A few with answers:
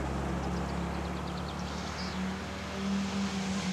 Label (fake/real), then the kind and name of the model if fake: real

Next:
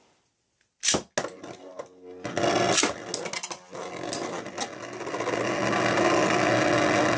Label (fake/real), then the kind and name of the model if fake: real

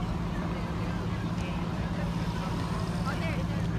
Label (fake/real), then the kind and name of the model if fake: real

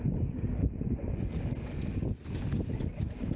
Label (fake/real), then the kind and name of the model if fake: real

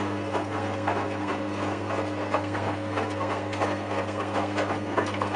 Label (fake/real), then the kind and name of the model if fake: fake, codec, SNAC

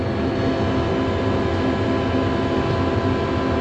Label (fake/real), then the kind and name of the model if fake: real